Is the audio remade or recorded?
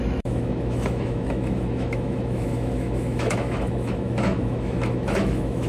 remade